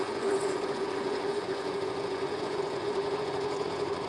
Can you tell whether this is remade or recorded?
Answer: remade